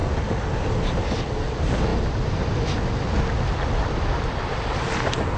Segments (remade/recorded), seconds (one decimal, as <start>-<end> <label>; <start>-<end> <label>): 0.0-1.9 recorded; 1.9-5.4 remade